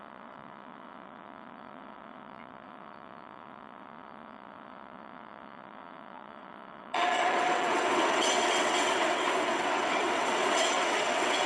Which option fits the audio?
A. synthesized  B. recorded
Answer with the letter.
A